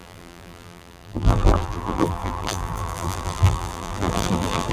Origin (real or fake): fake